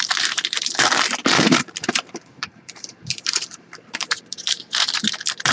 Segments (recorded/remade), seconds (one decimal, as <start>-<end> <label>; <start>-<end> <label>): 0.0-1.2 recorded; 1.2-4.4 remade; 4.4-5.5 recorded